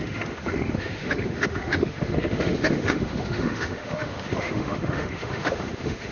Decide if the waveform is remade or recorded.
remade